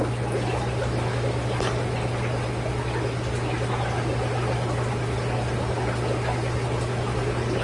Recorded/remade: recorded